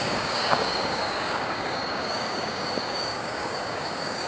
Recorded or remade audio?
remade